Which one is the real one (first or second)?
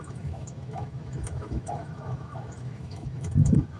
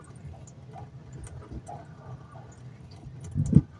second